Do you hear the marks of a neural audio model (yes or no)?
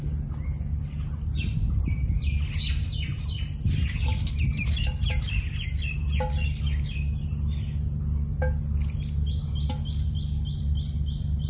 no